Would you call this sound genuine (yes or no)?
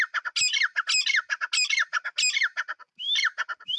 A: yes